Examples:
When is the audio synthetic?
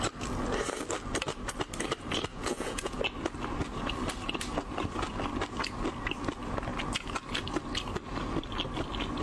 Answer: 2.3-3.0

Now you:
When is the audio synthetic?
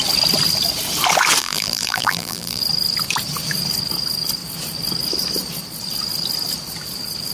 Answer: 1.4-2.6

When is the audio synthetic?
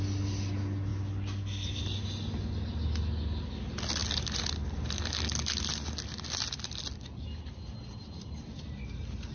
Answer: none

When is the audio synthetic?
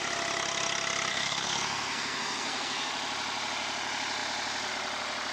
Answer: 1.1-2.9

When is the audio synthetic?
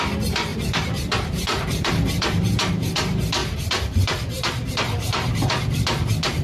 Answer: 0.5-2.7; 3.4-4.7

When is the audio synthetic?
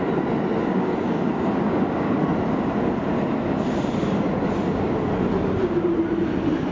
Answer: 0.7-2.2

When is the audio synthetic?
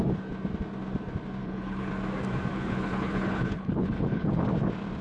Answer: 1.4-1.9; 2.5-4.4